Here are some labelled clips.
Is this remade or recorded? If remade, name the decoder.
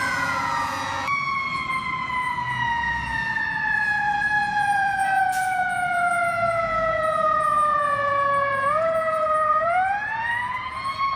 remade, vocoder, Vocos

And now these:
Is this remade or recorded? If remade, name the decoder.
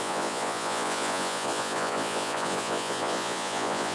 remade, vocoder, Vocos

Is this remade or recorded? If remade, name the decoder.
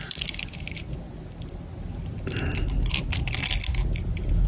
recorded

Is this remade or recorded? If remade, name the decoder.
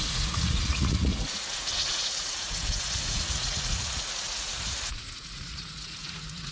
remade, vocoder, Vocos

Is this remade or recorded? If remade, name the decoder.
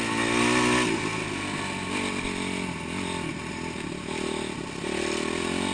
recorded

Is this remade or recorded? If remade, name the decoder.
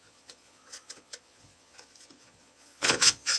remade, vocoder, Vocos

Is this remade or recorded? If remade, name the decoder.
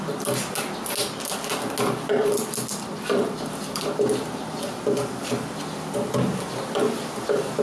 recorded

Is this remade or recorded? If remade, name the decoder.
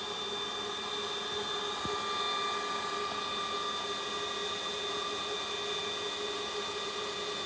recorded